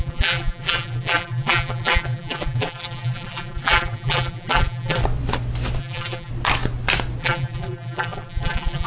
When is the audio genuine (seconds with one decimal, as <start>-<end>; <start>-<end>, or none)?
5.0-5.8; 6.3-7.2